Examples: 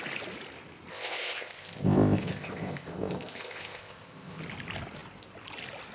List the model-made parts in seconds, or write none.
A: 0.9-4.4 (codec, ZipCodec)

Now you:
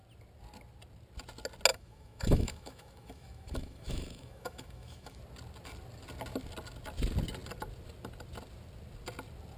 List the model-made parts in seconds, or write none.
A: 1.7-5.2 (autoencoder, DAC-VAE)

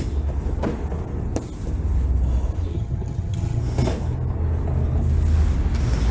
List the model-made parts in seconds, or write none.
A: 2.7-3.6 (vocoder, HiFi-GAN)

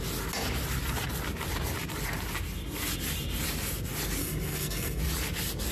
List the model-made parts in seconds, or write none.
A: 4.2-5.0 (codec, SNAC)